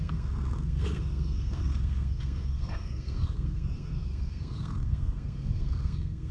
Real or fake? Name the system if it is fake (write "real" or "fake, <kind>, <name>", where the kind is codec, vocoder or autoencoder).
fake, codec, SNAC